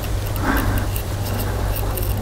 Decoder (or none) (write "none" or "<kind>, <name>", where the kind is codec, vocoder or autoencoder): none